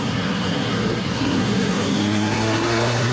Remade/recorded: remade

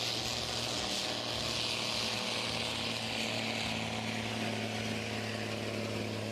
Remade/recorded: recorded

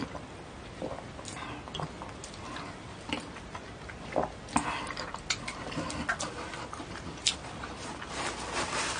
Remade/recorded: recorded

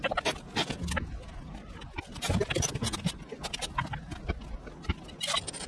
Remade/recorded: recorded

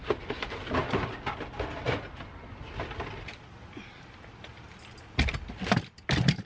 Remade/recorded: recorded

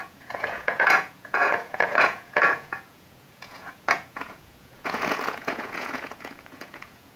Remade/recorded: remade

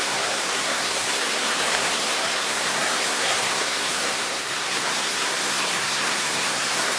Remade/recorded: remade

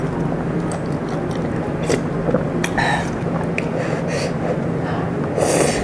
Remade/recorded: recorded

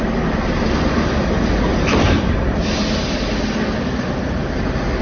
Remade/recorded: recorded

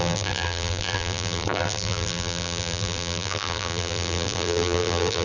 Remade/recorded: remade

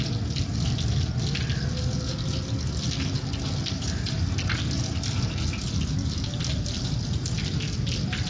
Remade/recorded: recorded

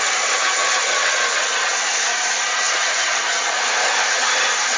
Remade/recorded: remade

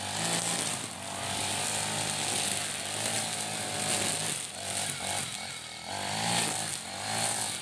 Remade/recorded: recorded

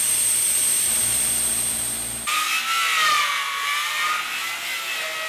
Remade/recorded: recorded